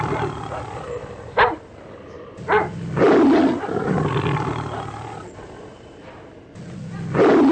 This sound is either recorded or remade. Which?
recorded